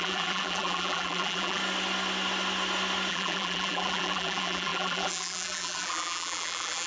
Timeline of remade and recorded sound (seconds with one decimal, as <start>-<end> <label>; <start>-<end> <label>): 0.0-1.6 remade; 1.6-3.1 recorded; 3.1-6.9 remade